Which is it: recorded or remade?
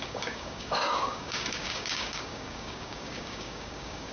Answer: remade